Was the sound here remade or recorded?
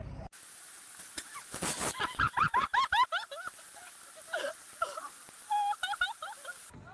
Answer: recorded